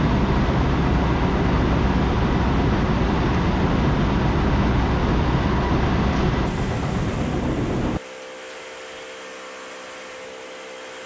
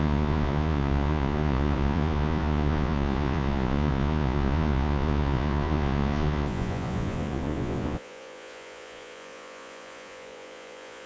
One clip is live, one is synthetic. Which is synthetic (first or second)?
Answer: second